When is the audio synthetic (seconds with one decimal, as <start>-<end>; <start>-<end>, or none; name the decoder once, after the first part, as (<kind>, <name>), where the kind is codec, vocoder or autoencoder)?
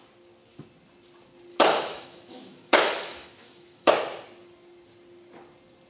1.5-3.9 (autoencoder, DAC-VAE)